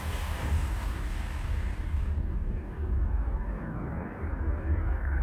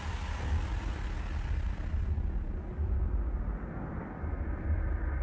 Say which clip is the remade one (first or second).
first